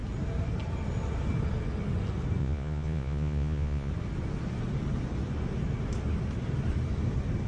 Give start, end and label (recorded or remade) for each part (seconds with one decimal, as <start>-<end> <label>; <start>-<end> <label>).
0.0-2.4 recorded; 2.4-3.9 remade; 3.9-7.5 recorded